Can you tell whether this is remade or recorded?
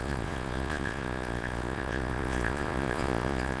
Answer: remade